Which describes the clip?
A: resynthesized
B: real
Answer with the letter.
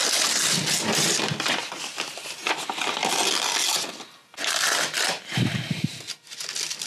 B